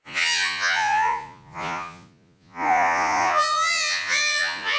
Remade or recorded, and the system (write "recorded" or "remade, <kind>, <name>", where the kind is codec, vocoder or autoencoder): remade, vocoder, Vocos